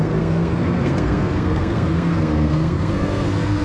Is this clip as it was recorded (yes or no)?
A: no